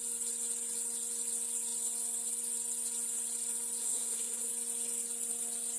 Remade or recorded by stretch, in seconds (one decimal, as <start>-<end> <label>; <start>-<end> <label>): 0.0-3.8 recorded; 3.8-4.5 remade; 4.5-5.8 recorded